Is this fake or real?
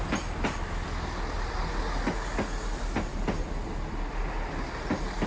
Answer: real